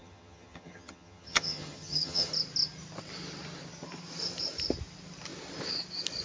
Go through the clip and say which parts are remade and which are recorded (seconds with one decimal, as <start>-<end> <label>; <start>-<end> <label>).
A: 0.0-2.3 remade; 2.3-6.2 recorded